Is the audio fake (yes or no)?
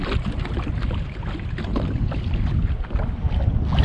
no